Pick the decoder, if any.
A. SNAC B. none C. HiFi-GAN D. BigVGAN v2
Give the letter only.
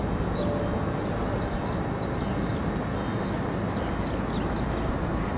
B